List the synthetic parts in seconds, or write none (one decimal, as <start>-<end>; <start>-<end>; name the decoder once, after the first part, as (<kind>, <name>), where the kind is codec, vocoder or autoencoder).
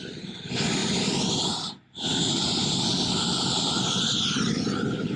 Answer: 0.8-3.9 (vocoder, BigVGAN v2)